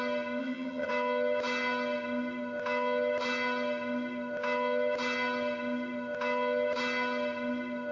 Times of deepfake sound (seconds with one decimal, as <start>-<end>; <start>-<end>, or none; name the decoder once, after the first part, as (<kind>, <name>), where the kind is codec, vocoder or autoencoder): 0.4-0.9 (vocoder, HiFi-GAN)

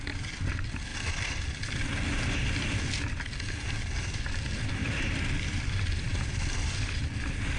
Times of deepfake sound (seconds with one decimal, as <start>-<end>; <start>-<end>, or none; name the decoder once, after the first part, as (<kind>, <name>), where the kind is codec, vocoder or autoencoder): none

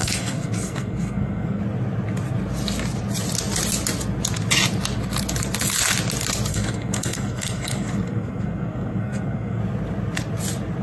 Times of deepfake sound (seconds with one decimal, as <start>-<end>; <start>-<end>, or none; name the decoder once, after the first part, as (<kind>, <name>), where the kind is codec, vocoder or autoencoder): 0.0-1.6 (codec, SNAC); 6.5-9.6

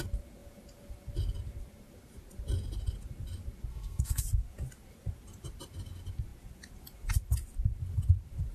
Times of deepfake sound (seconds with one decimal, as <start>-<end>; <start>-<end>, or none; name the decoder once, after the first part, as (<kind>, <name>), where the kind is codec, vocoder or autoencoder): 3.7-4.2 (codec, SNAC)